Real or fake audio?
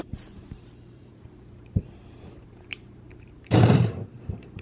fake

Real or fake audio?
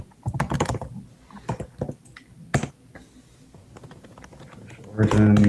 real